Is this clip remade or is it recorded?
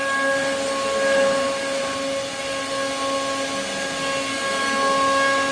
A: recorded